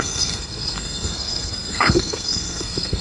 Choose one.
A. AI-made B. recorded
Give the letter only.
A